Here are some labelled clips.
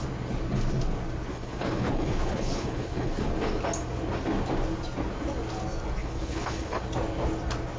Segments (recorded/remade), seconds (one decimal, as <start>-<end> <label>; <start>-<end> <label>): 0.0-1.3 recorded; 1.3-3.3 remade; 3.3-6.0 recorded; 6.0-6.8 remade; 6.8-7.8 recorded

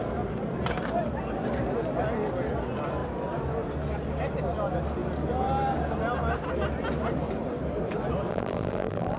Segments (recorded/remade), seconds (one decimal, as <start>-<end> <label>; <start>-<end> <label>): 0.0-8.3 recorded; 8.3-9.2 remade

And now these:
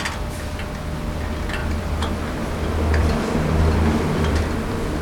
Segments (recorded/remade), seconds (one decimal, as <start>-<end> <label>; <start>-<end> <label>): 0.0-1.6 recorded; 1.6-2.4 remade; 2.4-3.0 recorded; 3.0-4.4 remade; 4.4-5.0 recorded